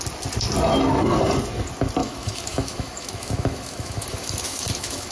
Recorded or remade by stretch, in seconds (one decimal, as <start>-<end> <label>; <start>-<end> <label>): 0.0-2.0 recorded; 2.0-5.1 remade